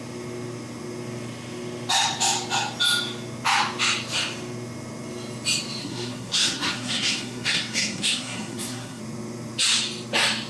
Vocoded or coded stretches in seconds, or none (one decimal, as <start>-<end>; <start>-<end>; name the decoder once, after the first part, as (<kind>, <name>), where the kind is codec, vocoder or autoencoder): 5.8-9.0 (codec, SNAC)